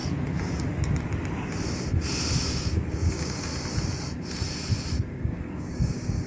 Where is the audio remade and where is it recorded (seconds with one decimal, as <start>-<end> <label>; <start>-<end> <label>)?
0.0-2.4 recorded; 2.4-3.5 remade; 3.5-5.1 recorded; 5.1-6.3 remade